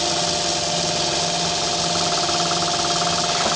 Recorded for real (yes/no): yes